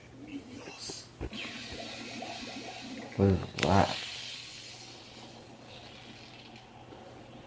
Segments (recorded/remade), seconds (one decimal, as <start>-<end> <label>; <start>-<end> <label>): 0.0-7.5 recorded

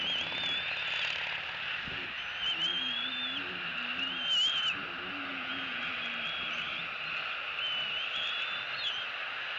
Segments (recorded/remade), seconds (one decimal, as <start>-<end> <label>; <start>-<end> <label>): 0.0-5.3 recorded; 5.3-5.8 remade; 5.8-9.6 recorded

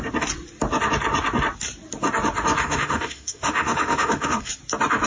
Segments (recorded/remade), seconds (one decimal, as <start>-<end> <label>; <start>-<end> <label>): 0.0-2.6 recorded; 2.6-4.5 remade; 4.5-5.1 recorded

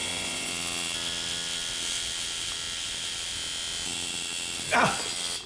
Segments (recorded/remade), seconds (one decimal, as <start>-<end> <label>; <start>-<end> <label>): 0.0-0.5 remade; 0.5-5.5 recorded

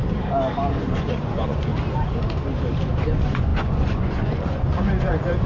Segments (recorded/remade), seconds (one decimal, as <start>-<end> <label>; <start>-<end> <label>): 0.0-0.7 recorded; 0.7-1.7 remade; 1.7-3.0 recorded; 3.0-5.5 remade

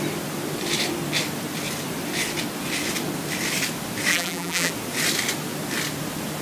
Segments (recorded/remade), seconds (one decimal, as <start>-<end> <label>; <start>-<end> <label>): 0.0-4.1 recorded; 4.1-4.7 remade; 4.7-6.4 recorded

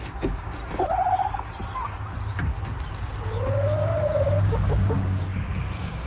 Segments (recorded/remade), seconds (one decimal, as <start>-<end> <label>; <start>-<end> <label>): 0.0-0.6 remade; 0.6-3.5 recorded; 3.5-6.1 remade